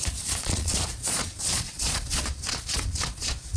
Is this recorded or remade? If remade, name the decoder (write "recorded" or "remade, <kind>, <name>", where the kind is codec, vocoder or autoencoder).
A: remade, vocoder, Vocos